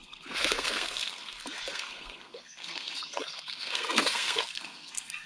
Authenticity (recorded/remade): remade